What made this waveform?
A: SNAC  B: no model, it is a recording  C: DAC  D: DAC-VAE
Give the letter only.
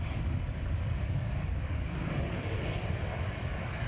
C